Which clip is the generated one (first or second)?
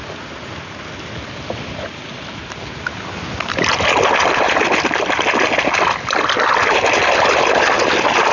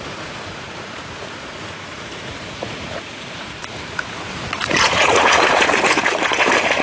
second